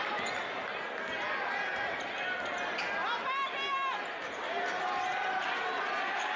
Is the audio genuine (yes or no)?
yes